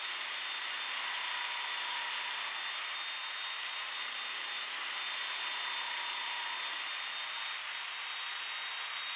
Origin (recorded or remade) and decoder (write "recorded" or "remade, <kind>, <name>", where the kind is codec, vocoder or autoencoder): recorded